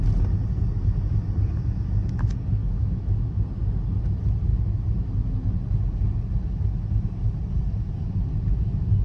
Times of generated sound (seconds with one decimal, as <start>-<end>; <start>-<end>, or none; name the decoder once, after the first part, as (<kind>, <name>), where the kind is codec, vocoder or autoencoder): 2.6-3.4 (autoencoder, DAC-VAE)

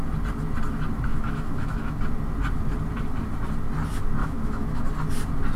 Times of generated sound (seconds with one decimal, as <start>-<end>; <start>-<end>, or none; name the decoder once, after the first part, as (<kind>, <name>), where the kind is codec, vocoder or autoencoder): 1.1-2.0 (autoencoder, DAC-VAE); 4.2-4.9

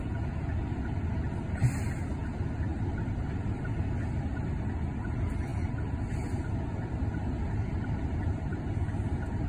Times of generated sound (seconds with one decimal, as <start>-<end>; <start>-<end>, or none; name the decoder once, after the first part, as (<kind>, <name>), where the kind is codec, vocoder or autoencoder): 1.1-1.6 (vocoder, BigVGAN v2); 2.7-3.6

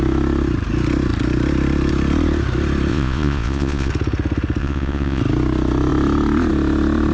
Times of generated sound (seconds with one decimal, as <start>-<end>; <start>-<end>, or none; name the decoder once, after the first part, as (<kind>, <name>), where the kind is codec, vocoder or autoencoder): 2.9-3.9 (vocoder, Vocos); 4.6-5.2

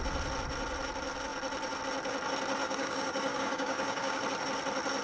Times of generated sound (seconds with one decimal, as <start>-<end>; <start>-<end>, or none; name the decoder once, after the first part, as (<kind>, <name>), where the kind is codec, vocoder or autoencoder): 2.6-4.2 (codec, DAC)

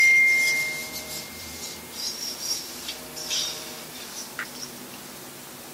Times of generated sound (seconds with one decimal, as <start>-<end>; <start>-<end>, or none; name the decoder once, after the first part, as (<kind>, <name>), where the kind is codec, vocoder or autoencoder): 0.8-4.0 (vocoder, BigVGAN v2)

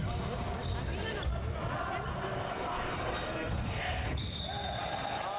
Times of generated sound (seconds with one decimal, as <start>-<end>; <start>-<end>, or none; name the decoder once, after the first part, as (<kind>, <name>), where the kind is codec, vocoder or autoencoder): 2.1-4.4 (codec, SNAC)